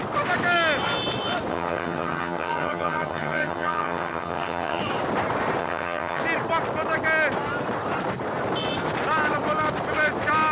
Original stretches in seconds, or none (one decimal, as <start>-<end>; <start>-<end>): 0.0-1.5; 4.8-5.6; 6.2-10.5